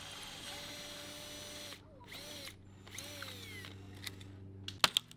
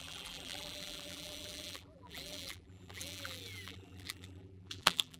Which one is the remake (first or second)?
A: second